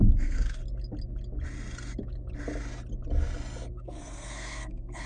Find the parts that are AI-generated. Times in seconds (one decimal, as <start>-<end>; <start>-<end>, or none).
0.0-0.6; 3.7-5.1